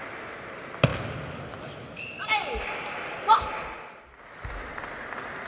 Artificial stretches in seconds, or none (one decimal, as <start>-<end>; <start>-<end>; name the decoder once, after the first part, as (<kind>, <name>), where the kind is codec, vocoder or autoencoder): none